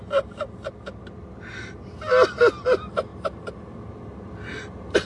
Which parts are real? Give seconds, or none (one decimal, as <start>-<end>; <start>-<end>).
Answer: 0.0-3.1; 3.6-5.1